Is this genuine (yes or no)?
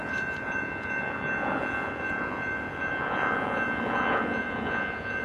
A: no